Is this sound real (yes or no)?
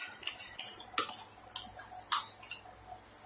yes